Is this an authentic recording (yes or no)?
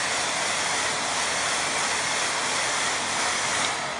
yes